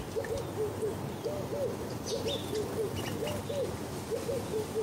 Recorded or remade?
recorded